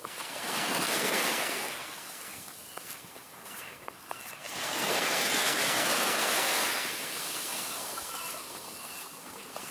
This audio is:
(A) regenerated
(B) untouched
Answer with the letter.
A